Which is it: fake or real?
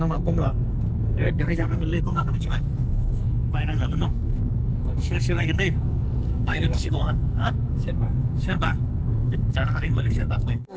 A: fake